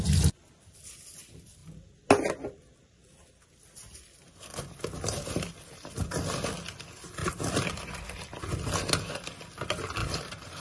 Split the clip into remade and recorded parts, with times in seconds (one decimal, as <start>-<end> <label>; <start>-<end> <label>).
0.0-7.2 recorded; 7.2-8.4 remade; 8.4-10.0 recorded; 10.0-10.6 remade